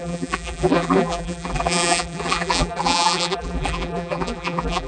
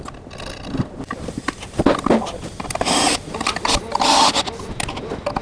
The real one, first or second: second